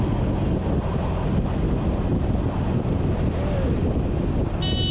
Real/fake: real